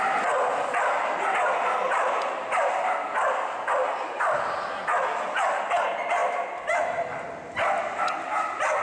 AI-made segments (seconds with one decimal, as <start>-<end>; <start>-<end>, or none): none